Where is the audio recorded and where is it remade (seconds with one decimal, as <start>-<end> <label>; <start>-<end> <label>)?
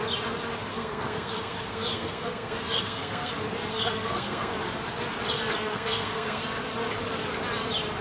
0.0-0.7 recorded; 0.7-3.3 remade; 3.3-3.7 recorded; 3.7-4.5 remade; 4.5-5.7 recorded; 5.7-6.4 remade; 6.4-8.0 recorded